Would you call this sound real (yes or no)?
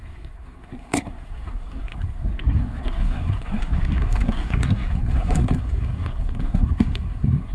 no